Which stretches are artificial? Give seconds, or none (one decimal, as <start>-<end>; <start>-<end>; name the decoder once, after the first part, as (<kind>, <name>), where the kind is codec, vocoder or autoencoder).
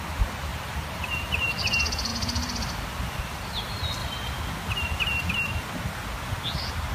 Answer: 0.5-1.0 (vocoder, BigVGAN v2); 2.1-3.2